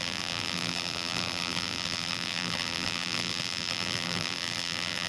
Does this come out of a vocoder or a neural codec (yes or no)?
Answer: yes